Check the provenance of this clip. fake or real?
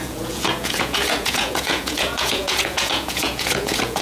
fake